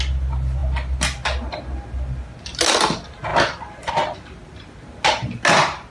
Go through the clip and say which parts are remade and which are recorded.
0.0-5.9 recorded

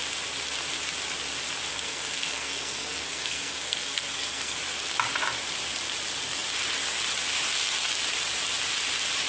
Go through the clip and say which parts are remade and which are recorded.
0.0-1.7 recorded; 1.7-4.6 remade; 4.6-9.3 recorded

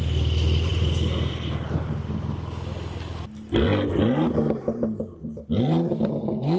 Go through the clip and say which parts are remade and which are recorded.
0.0-6.6 recorded

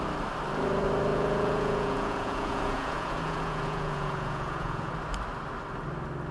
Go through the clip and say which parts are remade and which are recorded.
0.0-1.1 recorded; 1.1-4.9 remade; 4.9-6.3 recorded

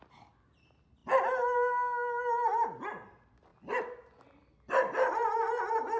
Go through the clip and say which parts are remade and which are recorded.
0.0-6.0 recorded

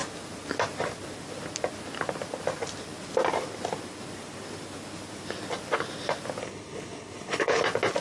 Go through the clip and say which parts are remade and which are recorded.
0.0-6.4 recorded; 6.4-7.6 remade; 7.6-8.0 recorded